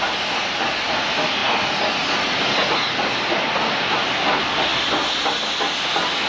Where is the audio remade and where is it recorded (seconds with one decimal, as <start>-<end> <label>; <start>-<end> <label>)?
0.0-6.3 recorded